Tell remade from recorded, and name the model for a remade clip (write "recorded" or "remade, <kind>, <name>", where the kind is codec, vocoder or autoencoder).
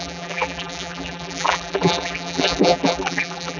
remade, vocoder, BigVGAN v2